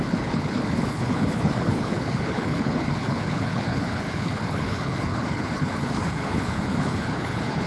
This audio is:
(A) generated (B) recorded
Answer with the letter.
A